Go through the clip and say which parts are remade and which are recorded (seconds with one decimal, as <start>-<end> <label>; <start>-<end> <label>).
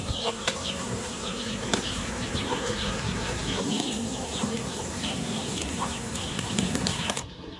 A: 0.0-7.6 remade